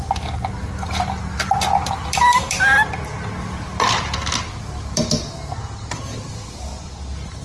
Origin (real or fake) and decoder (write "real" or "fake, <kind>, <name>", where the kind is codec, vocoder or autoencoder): real